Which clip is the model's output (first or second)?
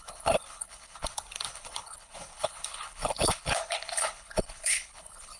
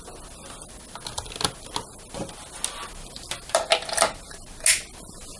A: first